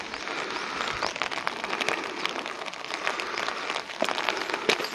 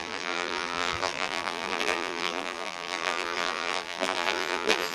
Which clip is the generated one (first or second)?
second